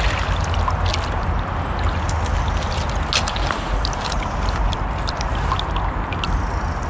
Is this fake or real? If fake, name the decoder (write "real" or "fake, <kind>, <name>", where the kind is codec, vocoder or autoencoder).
real